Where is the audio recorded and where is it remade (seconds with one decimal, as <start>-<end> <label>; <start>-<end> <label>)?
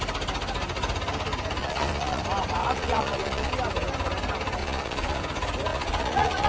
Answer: 0.0-1.6 recorded; 1.6-2.2 remade; 2.2-2.6 recorded; 2.6-3.5 remade; 3.5-4.6 recorded; 4.6-5.2 remade; 5.2-5.7 recorded; 5.7-6.5 remade